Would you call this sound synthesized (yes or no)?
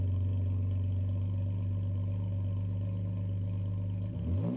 no